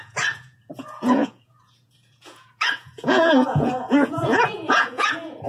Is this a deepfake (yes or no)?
yes